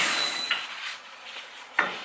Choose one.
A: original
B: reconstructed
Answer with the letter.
B